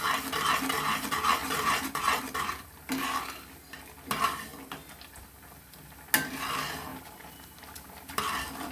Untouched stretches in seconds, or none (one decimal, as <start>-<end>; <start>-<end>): 0.0-1.4; 2.0-6.9; 8.2-8.7